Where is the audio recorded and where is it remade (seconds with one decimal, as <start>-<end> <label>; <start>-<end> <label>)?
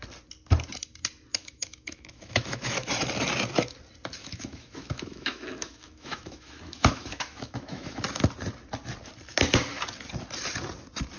0.0-1.3 recorded; 1.3-2.9 remade; 2.9-4.2 recorded; 4.2-8.0 remade; 8.0-11.2 recorded